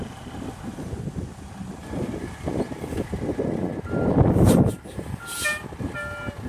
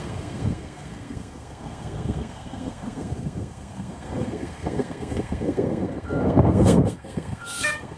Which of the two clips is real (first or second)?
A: first